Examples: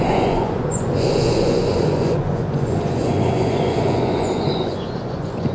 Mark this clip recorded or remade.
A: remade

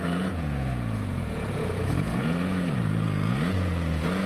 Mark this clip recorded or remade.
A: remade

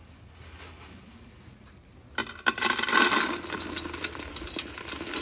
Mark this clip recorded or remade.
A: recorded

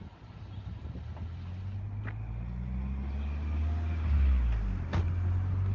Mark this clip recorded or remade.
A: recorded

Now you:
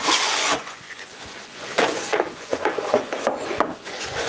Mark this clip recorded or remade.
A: remade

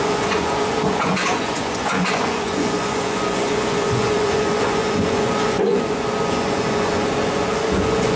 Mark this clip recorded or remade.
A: remade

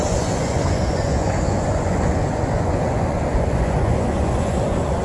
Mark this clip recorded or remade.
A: remade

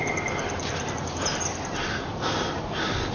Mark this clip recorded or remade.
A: recorded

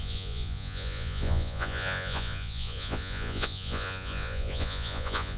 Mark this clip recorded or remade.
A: remade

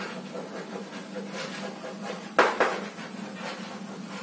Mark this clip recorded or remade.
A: recorded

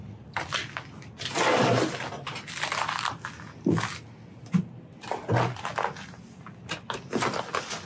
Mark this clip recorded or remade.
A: recorded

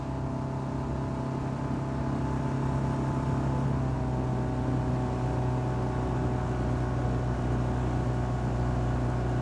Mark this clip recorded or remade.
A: recorded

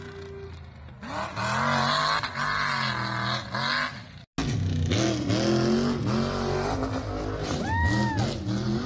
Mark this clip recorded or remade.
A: recorded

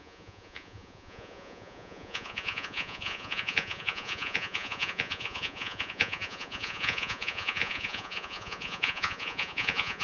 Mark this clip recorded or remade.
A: remade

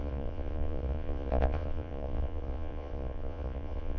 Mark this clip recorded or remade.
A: remade